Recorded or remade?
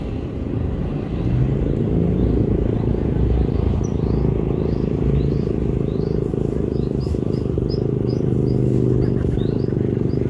recorded